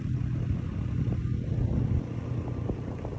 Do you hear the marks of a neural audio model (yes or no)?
no